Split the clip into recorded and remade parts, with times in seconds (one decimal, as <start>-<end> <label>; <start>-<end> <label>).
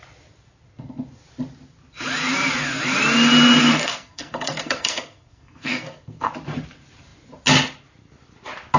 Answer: 0.0-3.6 recorded; 3.6-6.3 remade; 6.3-8.8 recorded